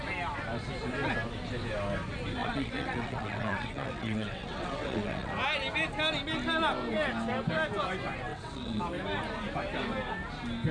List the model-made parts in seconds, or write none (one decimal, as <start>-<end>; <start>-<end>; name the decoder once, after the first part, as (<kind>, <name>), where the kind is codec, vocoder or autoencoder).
2.4-5.3 (vocoder, WaveNeXt); 8.3-8.8